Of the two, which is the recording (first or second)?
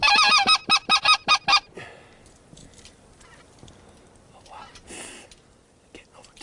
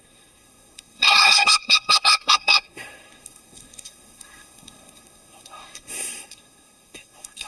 first